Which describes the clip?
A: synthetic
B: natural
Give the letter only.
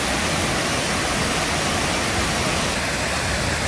B